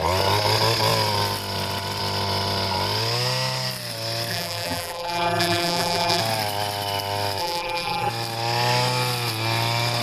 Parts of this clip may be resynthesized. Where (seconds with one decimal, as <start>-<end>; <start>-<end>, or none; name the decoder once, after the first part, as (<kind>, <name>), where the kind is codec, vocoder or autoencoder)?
4.3-6.2 (vocoder, BigVGAN v2); 7.4-8.1